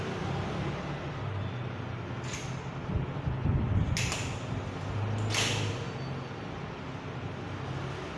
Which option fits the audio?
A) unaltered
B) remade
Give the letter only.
A